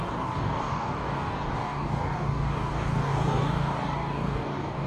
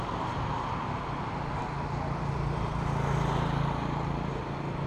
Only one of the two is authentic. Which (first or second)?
second